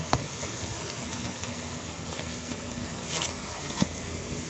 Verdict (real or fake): fake